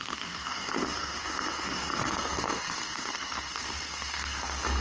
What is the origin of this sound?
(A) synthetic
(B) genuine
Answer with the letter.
A